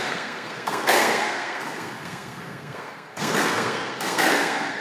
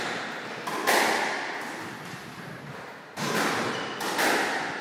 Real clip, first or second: second